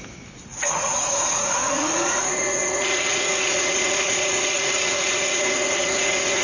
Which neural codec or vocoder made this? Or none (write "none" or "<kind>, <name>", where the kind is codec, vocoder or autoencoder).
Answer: vocoder, Vocos